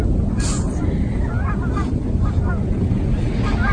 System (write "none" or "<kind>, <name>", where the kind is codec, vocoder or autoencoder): none